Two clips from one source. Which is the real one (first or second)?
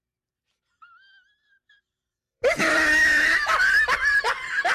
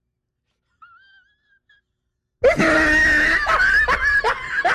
second